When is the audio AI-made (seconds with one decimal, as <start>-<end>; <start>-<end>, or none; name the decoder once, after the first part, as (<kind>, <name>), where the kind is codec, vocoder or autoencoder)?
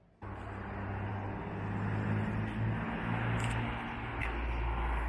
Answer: none